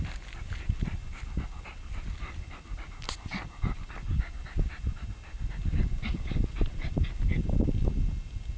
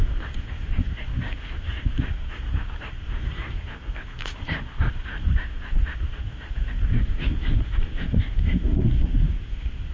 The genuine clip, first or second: first